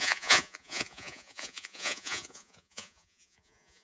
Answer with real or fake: fake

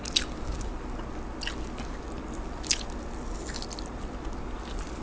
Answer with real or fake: real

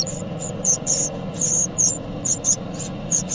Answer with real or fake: fake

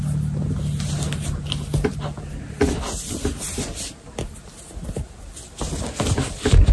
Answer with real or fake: real